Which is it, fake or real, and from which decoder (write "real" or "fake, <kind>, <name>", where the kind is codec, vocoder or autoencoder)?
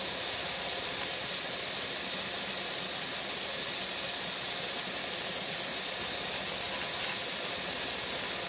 real